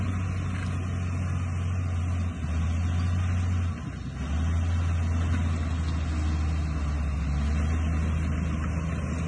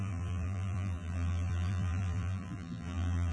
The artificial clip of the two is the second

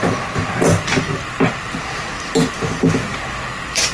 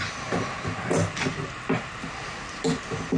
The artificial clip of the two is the first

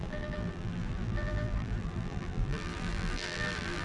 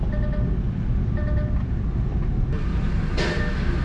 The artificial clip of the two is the first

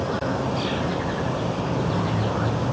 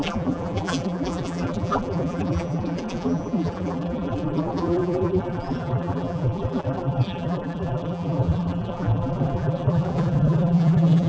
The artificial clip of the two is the second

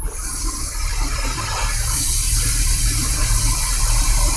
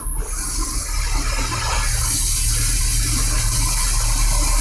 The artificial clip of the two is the first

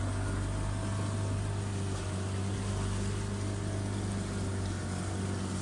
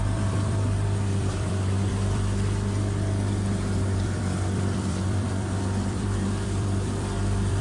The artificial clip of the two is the second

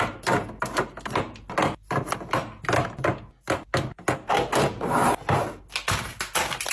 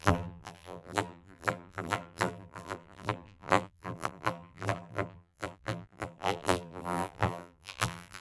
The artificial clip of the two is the second